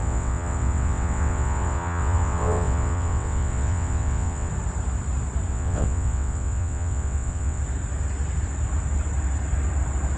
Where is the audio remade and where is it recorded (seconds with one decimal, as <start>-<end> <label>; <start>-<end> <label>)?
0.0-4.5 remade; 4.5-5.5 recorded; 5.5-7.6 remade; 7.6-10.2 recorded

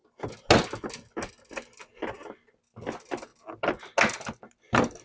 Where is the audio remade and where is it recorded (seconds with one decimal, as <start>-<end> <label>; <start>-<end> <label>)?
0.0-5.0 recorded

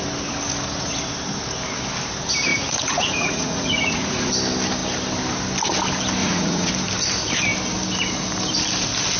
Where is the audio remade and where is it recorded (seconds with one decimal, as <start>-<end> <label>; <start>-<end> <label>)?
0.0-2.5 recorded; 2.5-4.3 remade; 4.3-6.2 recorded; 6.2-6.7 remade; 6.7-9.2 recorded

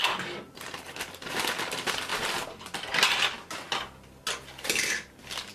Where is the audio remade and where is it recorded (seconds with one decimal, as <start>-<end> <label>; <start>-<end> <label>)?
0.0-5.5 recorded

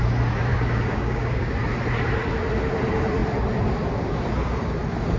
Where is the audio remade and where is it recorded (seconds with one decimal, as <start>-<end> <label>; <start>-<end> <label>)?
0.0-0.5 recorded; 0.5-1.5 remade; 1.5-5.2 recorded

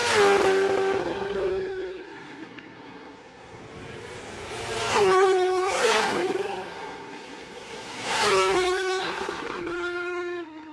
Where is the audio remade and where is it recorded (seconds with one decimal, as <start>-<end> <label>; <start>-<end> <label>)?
0.0-1.0 recorded; 1.0-3.6 remade; 3.6-4.9 recorded; 4.9-10.7 remade

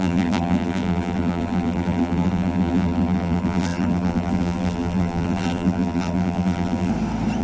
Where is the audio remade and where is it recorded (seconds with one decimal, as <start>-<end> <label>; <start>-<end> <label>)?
0.0-6.9 remade; 6.9-7.4 recorded

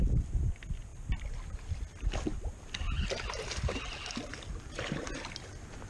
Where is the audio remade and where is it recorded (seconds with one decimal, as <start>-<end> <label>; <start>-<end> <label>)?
0.0-5.9 recorded